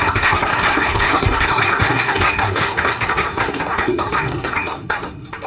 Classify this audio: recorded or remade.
remade